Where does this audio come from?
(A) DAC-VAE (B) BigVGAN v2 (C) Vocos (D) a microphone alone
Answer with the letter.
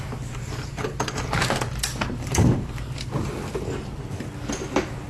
D